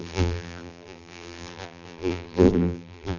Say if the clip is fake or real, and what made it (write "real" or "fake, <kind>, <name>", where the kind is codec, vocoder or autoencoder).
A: fake, vocoder, BigVGAN v2